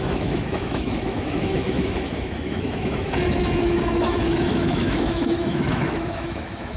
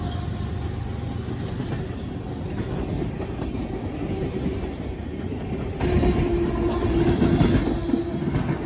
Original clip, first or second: second